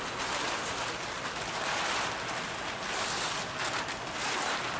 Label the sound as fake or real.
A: real